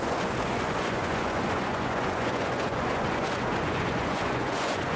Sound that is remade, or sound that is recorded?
remade